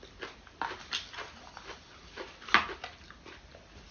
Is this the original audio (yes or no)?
yes